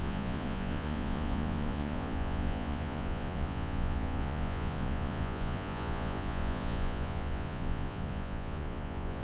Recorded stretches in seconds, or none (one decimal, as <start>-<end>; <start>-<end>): none